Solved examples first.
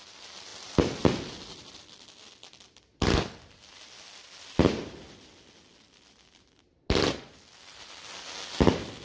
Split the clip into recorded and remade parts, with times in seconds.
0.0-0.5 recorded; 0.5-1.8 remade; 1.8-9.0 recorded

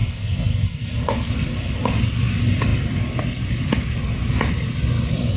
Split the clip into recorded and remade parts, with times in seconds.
0.0-1.3 remade; 1.3-5.4 recorded